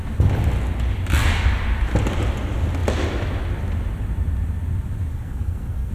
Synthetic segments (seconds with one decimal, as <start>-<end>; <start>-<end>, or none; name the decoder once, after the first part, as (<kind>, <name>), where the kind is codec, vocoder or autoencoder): 5.1-5.9 (codec, SNAC)